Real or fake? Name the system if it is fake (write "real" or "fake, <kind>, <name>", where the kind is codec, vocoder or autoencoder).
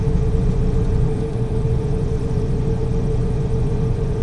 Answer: fake, vocoder, Vocos